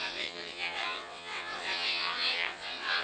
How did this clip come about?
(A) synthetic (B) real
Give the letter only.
A